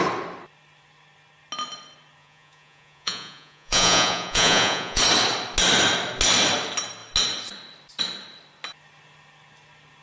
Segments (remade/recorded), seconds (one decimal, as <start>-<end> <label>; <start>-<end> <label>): 0.0-2.2 recorded; 2.2-5.0 remade; 5.0-10.0 recorded